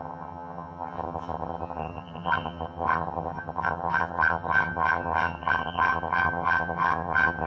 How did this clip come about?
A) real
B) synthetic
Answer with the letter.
B